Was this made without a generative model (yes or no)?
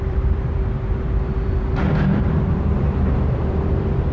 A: no